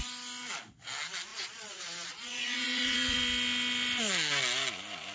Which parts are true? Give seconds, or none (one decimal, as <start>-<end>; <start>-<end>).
0.0-1.3; 3.2-5.1